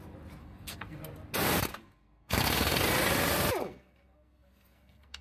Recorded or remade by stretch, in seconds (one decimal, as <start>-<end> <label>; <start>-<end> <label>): 0.0-0.4 recorded; 0.4-1.0 remade; 1.0-1.7 recorded; 1.7-2.8 remade; 2.8-3.6 recorded; 3.6-5.2 remade